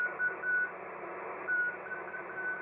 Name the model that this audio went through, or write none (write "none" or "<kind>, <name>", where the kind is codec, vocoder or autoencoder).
none